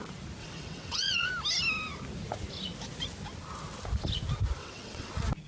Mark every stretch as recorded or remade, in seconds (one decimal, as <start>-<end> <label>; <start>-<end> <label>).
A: 0.0-0.4 recorded; 0.4-1.3 remade; 1.3-4.6 recorded; 4.6-5.1 remade; 5.1-5.5 recorded